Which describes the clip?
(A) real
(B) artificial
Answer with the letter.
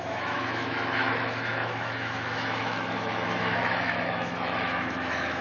B